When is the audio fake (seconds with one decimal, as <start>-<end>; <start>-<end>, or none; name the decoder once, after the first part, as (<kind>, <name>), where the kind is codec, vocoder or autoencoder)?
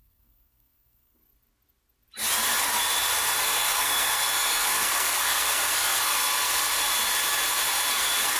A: 0.0-1.2 (codec, SNAC); 3.4-6.9; 7.9-8.4